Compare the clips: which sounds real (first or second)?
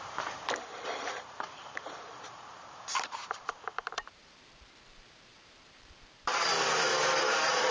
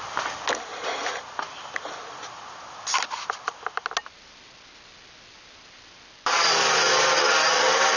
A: second